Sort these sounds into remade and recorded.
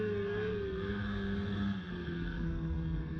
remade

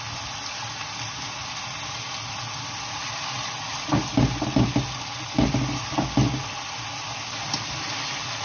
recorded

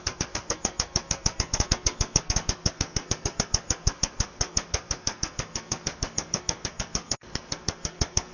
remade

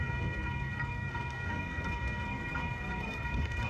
remade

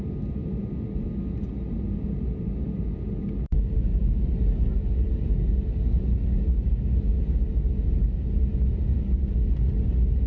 recorded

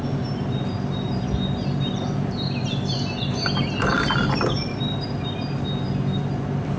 recorded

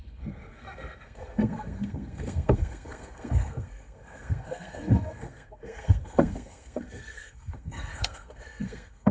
remade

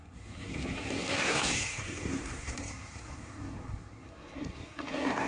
remade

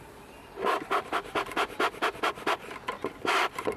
recorded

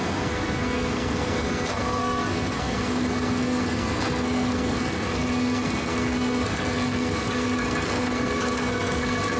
remade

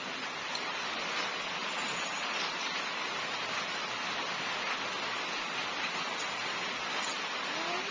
recorded